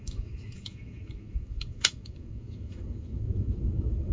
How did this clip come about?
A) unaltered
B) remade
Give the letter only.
B